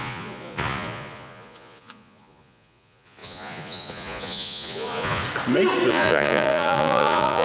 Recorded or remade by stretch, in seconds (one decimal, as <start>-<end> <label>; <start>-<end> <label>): 0.0-5.2 remade; 5.2-5.9 recorded; 5.9-7.4 remade